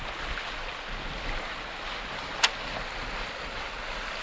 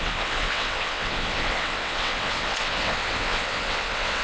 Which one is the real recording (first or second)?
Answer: first